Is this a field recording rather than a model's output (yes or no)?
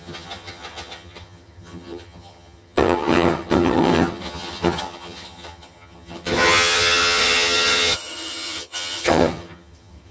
no